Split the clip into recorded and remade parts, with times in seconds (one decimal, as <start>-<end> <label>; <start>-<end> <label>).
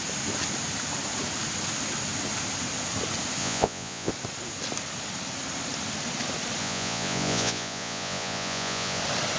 0.0-3.4 recorded; 3.4-4.1 remade; 4.1-6.6 recorded; 6.6-9.0 remade; 9.0-9.4 recorded